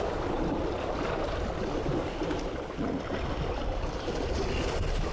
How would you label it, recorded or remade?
recorded